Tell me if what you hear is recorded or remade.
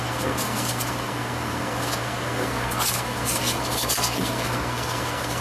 remade